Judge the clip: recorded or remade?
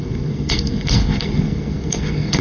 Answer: remade